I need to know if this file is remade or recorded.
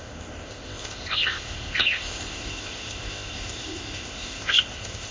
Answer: remade